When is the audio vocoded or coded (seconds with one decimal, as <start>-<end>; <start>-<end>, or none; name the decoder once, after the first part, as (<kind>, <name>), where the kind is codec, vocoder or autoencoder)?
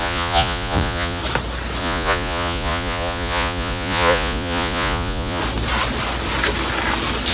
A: 0.0-1.2 (vocoder, Vocos); 1.8-5.4